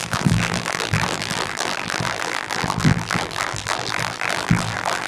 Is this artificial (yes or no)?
yes